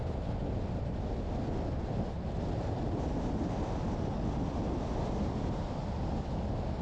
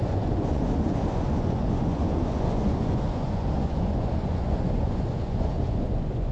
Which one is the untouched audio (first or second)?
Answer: first